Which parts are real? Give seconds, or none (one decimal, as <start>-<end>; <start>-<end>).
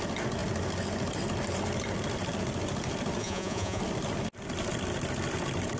0.0-3.2; 3.8-5.8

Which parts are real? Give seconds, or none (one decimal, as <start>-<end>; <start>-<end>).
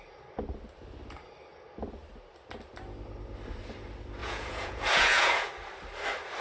0.0-4.2; 5.5-6.4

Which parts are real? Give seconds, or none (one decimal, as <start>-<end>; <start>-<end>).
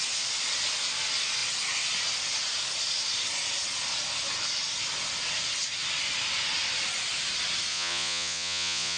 0.0-7.7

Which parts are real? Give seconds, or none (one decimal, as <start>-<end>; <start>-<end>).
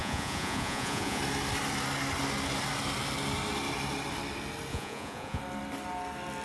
1.2-4.7; 5.4-6.4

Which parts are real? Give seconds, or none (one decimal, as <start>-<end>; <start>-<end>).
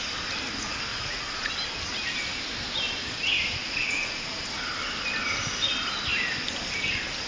0.0-0.9; 1.5-3.6; 4.4-7.3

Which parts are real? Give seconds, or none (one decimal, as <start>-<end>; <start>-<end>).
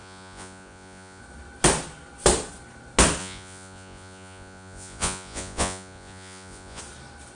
1.2-3.2; 6.8-7.4